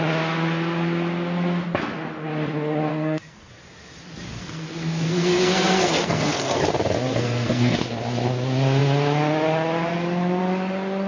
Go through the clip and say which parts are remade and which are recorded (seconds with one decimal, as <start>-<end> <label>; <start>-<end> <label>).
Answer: 0.0-2.9 recorded; 2.9-3.5 remade; 3.5-4.3 recorded; 4.3-6.6 remade; 6.6-7.1 recorded; 7.1-7.8 remade; 7.8-11.1 recorded